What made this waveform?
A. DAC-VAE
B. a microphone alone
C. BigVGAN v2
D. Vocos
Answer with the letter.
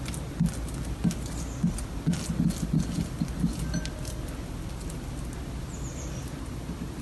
B